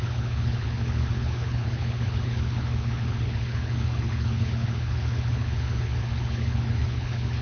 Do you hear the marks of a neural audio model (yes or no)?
yes